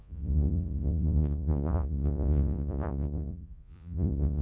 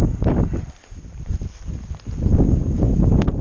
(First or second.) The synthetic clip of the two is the first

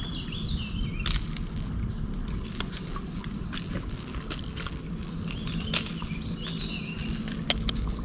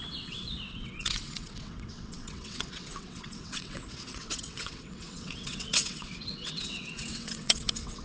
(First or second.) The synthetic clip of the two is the second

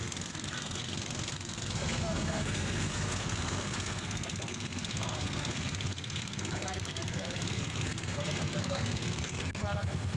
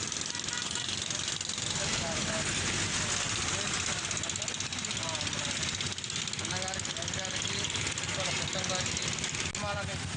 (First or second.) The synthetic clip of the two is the first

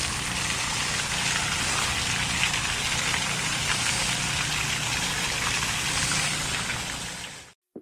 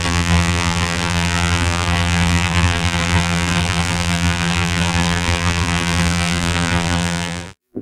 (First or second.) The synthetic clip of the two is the second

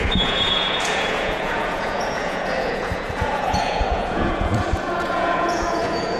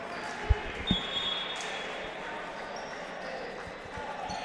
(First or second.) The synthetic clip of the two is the first